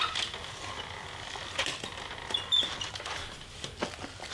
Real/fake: real